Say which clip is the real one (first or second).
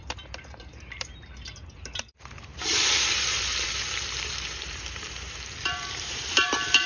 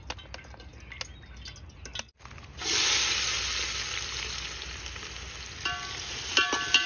second